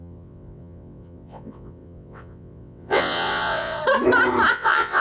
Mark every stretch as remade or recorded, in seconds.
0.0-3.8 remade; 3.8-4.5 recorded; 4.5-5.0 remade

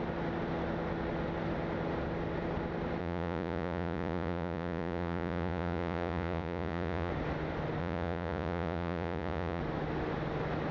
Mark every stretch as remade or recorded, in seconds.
0.0-3.0 recorded; 3.0-7.1 remade; 7.1-7.8 recorded; 7.8-9.6 remade; 9.6-10.7 recorded

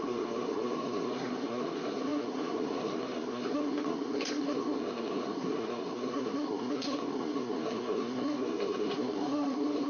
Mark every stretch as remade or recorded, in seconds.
0.0-9.9 remade

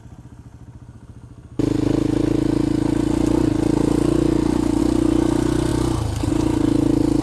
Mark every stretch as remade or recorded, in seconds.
0.0-7.2 recorded